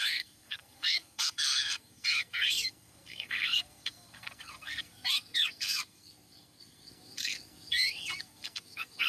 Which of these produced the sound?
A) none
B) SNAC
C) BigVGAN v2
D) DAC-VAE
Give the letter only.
B